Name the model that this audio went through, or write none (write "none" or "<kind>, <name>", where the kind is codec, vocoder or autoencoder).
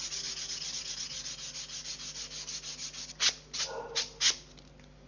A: none